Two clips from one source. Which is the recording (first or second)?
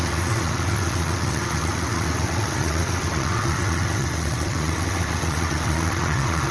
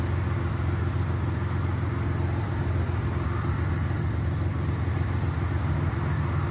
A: second